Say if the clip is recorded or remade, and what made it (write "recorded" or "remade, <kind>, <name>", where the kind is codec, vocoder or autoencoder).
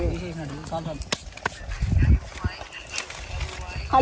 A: recorded